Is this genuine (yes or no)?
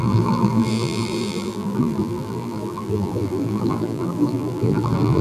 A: no